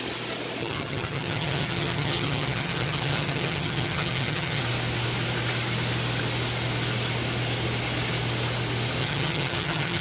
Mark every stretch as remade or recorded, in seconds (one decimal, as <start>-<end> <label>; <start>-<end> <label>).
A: 0.0-0.6 recorded; 0.6-4.6 remade; 4.6-9.0 recorded; 9.0-10.0 remade